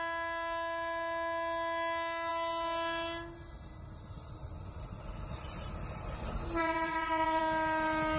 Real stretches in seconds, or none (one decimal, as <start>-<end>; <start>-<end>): 0.0-6.6; 7.4-8.2